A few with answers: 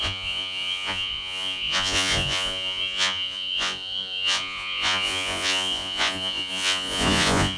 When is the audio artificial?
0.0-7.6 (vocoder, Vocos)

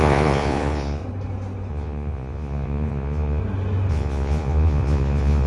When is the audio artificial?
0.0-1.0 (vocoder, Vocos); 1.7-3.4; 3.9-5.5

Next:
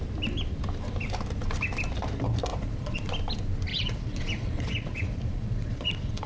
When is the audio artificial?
2.5-3.1 (vocoder, Vocos); 3.7-6.3